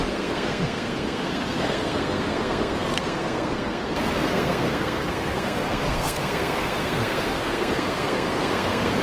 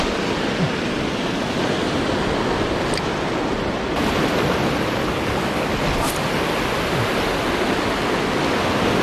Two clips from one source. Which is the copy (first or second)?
first